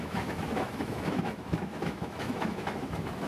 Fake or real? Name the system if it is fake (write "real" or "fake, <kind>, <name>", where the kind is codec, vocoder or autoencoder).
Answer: fake, autoencoder, DAC-VAE